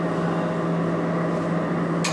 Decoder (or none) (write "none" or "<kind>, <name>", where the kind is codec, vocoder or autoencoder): none